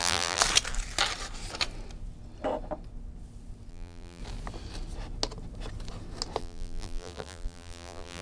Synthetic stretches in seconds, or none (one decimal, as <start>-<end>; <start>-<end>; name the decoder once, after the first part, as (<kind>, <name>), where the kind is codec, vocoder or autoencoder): 0.0-0.4 (vocoder, BigVGAN v2); 3.7-4.2; 6.4-8.2